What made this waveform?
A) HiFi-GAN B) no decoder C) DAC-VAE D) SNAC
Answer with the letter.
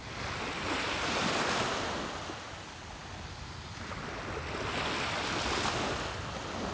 B